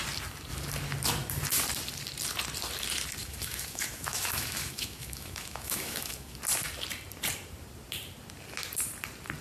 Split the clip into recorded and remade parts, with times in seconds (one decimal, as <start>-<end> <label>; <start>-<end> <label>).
0.0-3.2 recorded; 3.2-6.4 remade; 6.4-9.4 recorded